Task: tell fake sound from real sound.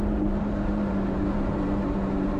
fake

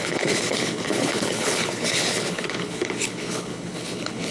fake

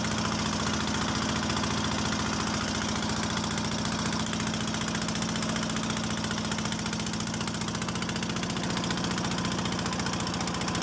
real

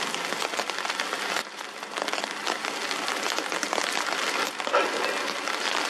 real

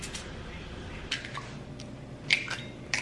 real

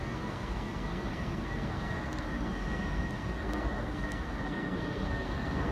fake